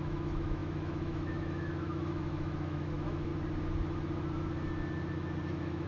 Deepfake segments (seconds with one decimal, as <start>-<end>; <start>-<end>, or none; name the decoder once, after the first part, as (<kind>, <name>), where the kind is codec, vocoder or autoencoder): 0.0-3.3 (autoencoder, DAC-VAE); 5.5-5.9